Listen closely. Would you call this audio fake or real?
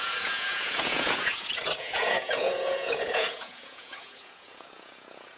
fake